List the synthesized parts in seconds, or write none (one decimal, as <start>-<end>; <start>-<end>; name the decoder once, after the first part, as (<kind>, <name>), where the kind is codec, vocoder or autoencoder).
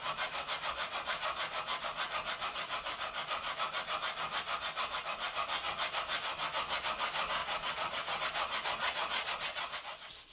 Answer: 7.4-8.2 (vocoder, Vocos); 8.8-9.9